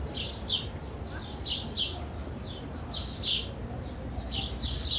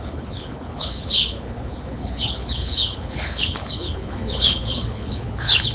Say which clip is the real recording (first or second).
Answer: first